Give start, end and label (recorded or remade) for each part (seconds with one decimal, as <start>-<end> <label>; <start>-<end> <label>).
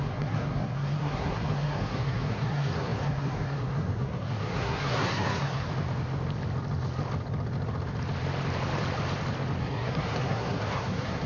0.0-5.7 remade; 5.7-9.6 recorded; 9.6-11.3 remade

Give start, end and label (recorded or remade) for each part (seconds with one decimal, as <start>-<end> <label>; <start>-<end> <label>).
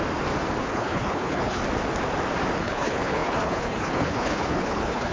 0.0-0.6 recorded; 0.6-1.6 remade; 1.6-2.6 recorded; 2.6-5.1 remade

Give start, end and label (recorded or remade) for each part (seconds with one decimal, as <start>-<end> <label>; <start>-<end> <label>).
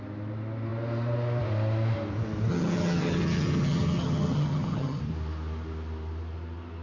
0.0-2.5 recorded; 2.5-5.0 remade; 5.0-6.8 recorded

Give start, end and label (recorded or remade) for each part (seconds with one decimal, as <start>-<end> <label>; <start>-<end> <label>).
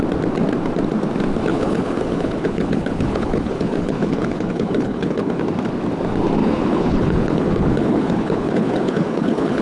0.0-1.5 recorded; 1.5-5.4 remade; 5.4-6.4 recorded; 6.4-9.6 remade